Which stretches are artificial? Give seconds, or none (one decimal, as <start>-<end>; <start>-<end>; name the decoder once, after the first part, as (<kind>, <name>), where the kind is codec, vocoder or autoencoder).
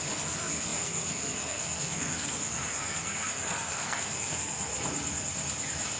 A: 0.0-4.7 (codec, SNAC)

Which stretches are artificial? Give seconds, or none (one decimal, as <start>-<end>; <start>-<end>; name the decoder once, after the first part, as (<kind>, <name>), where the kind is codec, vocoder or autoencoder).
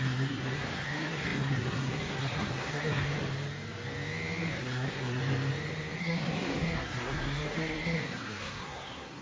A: 0.0-3.1 (codec, SNAC); 4.5-5.2; 6.0-9.2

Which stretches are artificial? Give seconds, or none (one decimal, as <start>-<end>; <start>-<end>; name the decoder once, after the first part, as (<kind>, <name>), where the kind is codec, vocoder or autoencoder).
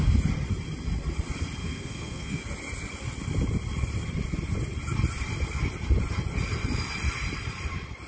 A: 1.6-2.4 (codec, SNAC)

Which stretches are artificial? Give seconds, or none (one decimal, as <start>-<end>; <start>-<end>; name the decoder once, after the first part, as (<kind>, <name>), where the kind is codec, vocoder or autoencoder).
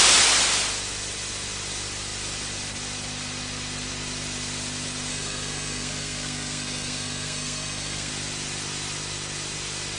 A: 5.1-8.1 (codec, SNAC)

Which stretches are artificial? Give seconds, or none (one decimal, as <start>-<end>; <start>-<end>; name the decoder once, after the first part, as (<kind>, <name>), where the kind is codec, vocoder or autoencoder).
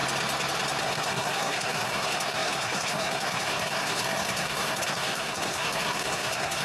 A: 0.8-6.6 (codec, SNAC)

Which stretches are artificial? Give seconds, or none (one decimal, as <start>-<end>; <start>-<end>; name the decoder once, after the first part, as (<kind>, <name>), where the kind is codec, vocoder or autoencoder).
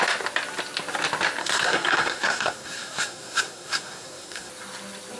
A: 1.4-4.5 (codec, SNAC)